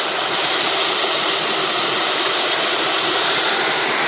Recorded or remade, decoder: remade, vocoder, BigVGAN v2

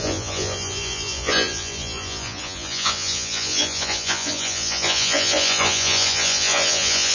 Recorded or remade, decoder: remade, vocoder, Vocos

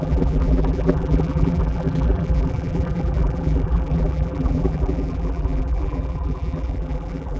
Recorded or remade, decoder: remade, vocoder, BigVGAN v2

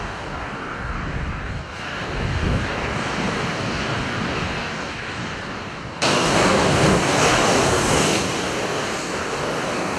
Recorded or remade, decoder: remade, codec, DAC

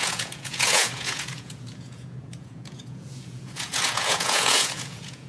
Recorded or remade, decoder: remade, vocoder, Vocos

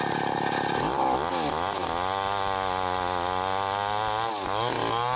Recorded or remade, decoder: recorded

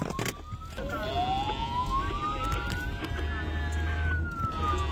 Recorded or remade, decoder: recorded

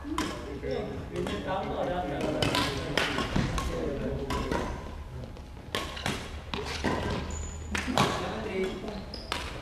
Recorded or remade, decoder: recorded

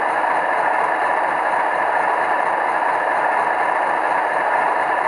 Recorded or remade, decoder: recorded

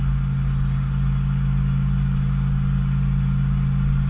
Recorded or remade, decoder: recorded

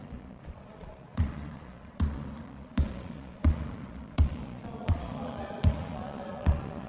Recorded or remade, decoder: remade, vocoder, Vocos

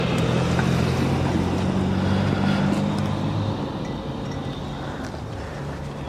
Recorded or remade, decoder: recorded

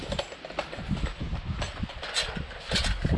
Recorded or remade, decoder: recorded